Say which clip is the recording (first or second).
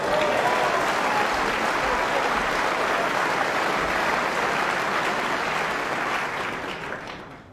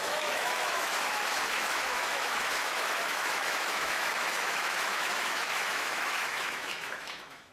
first